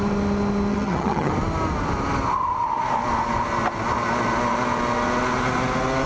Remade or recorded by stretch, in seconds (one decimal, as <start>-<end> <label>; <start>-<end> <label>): 0.0-0.7 recorded; 0.7-1.3 remade; 1.3-6.1 recorded